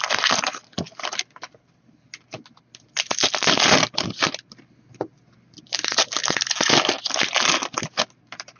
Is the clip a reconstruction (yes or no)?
no